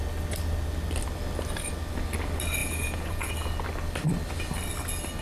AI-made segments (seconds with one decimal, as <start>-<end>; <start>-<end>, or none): 2.6-3.3